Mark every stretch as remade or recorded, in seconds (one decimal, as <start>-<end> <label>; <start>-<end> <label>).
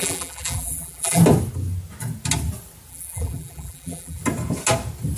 0.0-1.2 remade; 1.2-2.9 recorded; 2.9-4.2 remade; 4.2-5.2 recorded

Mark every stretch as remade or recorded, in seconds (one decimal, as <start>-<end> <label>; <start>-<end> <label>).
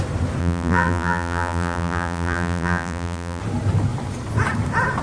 0.0-0.4 recorded; 0.4-3.4 remade; 3.4-5.0 recorded